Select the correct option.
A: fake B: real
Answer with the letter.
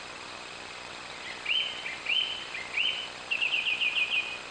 B